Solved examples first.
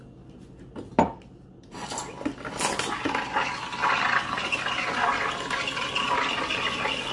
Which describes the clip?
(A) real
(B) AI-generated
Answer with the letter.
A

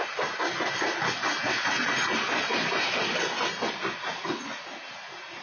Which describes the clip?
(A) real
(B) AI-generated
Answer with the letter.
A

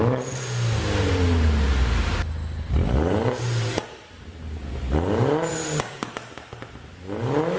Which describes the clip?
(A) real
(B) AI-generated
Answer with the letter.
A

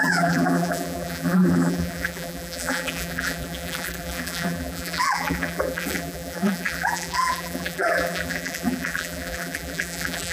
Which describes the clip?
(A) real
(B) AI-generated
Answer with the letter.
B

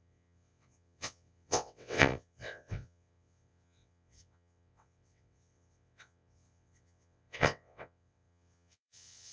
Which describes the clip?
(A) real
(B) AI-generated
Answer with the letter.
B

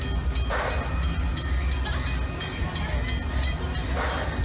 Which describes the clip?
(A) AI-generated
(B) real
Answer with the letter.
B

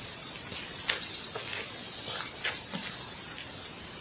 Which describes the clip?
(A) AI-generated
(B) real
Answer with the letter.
B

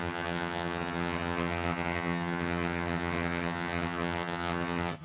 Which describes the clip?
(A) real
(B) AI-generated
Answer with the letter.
B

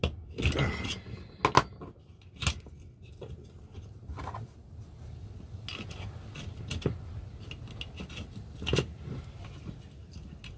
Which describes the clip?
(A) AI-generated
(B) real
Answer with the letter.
B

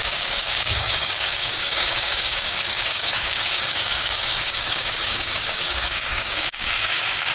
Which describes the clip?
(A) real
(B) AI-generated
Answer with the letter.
B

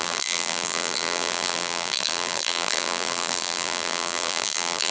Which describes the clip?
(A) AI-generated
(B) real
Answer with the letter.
A